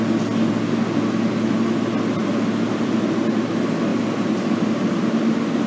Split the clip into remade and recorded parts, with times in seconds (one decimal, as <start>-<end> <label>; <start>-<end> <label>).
0.0-5.7 recorded